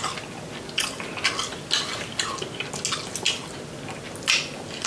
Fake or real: real